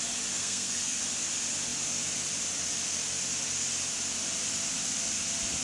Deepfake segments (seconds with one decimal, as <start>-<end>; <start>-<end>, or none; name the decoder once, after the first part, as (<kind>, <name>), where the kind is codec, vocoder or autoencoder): 0.4-1.0 (codec, SNAC)